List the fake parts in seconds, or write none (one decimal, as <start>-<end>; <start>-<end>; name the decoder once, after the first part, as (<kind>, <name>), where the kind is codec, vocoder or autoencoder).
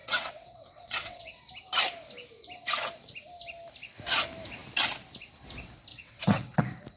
0.0-1.4 (vocoder, WaveNeXt); 5.9-6.6